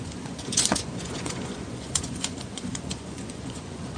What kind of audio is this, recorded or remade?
remade